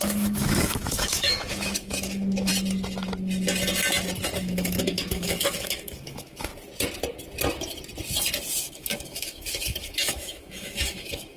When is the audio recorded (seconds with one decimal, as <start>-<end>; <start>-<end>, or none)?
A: 2.5-4.4; 6.5-8.6

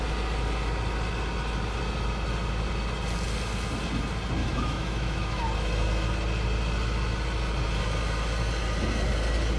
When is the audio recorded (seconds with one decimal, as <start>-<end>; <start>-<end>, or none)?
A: 0.0-4.4; 5.4-9.6

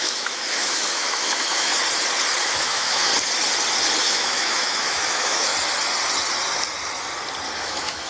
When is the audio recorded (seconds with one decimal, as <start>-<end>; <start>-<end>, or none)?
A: 1.7-2.4; 3.1-4.0; 5.5-7.6

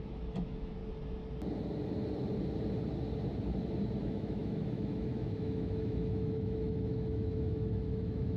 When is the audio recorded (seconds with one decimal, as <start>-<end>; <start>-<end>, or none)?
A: 0.8-4.0

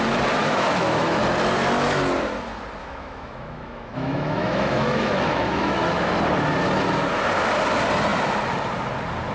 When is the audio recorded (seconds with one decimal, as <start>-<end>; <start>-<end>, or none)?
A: 0.0-0.4; 1.2-2.8; 6.1-9.3